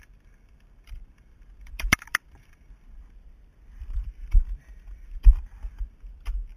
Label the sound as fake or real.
fake